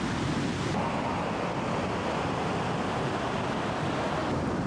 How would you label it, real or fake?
real